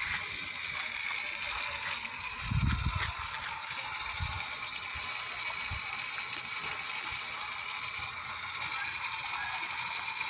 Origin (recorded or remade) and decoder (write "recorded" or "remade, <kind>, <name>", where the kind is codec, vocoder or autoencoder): recorded